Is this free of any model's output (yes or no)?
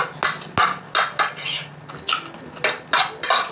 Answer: yes